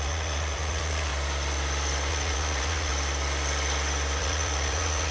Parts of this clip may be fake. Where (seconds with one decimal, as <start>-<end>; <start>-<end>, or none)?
0.0-1.1; 2.1-2.9; 4.2-5.1